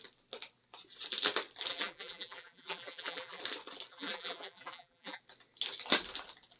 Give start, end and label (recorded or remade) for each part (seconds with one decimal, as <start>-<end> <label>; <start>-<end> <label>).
0.0-1.7 recorded; 1.7-3.4 remade; 3.4-3.9 recorded; 3.9-5.2 remade; 5.2-6.6 recorded